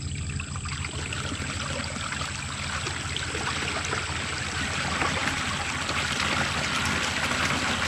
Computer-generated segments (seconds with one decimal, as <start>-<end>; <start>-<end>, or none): 5.2-5.7